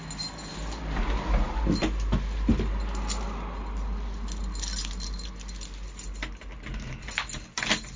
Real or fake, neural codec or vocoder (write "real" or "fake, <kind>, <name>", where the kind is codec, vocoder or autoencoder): real